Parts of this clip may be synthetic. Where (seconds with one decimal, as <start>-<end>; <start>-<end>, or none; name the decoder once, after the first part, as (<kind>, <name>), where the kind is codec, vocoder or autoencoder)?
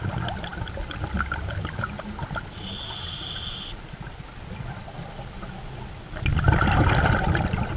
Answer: none